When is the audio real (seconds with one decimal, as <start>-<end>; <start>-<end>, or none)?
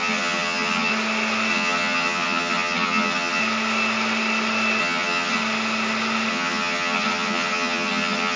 0.9-1.5; 3.4-4.8; 5.4-6.3